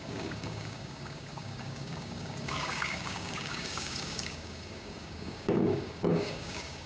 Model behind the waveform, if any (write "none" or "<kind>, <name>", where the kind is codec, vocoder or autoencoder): codec, DAC